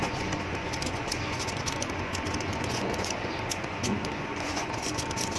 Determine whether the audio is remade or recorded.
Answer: remade